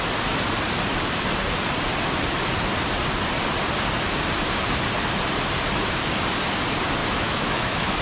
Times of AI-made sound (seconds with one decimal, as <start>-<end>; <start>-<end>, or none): 7.0-8.0